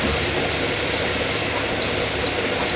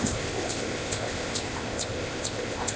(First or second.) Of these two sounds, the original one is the first